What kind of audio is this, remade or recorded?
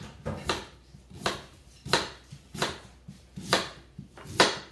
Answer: remade